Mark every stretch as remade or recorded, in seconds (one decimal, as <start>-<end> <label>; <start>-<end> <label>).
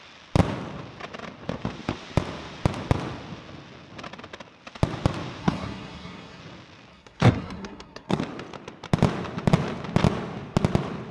0.0-5.4 recorded; 5.4-6.4 remade; 6.4-6.9 recorded; 6.9-8.2 remade; 8.2-11.1 recorded